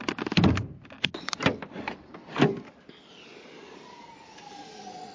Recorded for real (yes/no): yes